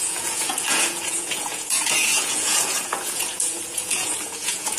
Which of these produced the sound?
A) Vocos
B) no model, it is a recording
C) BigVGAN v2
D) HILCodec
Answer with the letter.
A